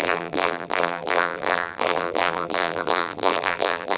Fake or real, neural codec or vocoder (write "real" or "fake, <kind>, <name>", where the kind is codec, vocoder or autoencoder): fake, vocoder, BigVGAN v2